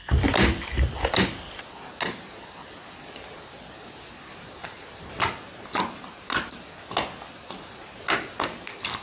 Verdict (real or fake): real